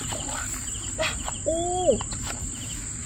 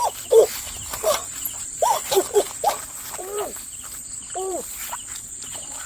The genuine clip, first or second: first